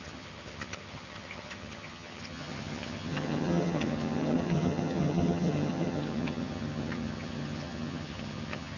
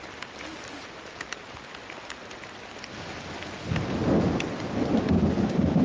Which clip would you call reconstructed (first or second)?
first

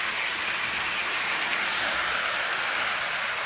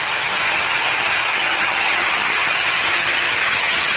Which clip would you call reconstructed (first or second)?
second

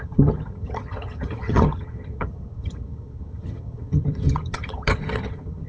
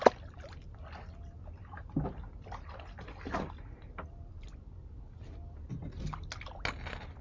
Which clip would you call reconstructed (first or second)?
first